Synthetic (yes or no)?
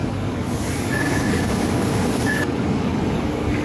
yes